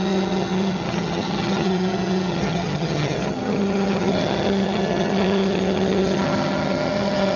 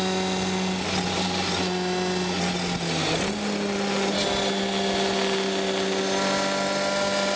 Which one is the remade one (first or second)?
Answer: first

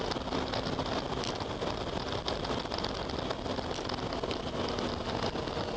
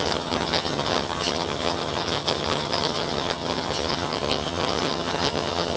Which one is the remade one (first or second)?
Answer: second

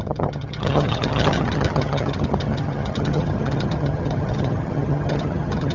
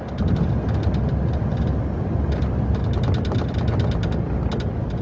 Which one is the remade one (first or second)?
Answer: first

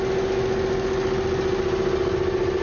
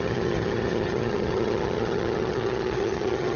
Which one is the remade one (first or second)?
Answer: second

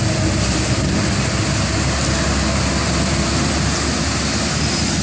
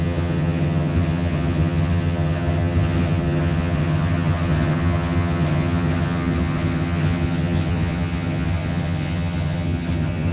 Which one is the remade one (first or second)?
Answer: second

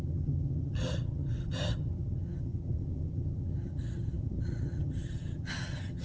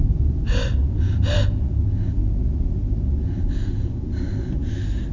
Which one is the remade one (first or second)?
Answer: first